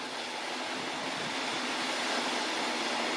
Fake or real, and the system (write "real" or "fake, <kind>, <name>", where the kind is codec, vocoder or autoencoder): real